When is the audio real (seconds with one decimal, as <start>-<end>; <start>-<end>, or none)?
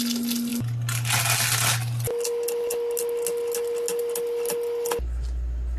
0.0-5.8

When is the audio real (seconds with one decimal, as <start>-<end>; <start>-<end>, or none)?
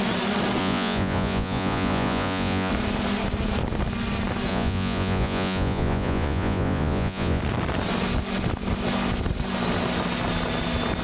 0.0-0.6; 2.7-4.5; 7.4-11.0